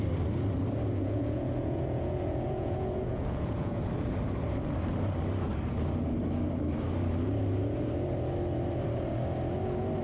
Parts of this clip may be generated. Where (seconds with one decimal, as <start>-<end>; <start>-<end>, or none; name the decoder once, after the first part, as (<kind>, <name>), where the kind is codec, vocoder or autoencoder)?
1.0-3.8 (vocoder, Vocos)